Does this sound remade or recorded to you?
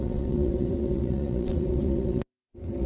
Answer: remade